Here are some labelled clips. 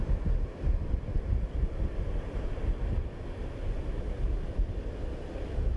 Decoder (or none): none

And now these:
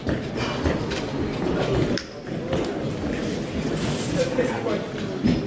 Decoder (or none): none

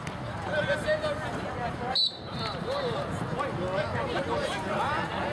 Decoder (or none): none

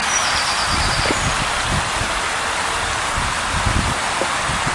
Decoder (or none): none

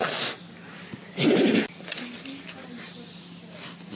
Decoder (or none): none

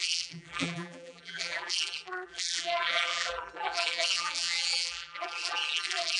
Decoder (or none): vocoder, BigVGAN v2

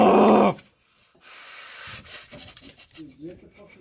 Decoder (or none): none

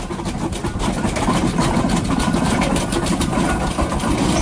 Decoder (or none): none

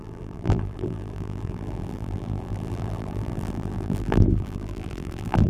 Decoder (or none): vocoder, BigVGAN v2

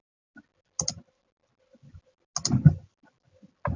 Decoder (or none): none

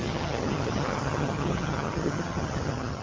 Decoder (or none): vocoder, HiFi-GAN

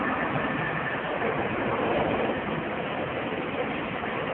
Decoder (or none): none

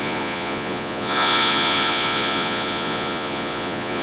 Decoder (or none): vocoder, Vocos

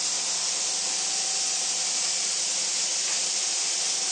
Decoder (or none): none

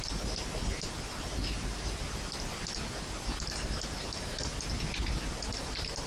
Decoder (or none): none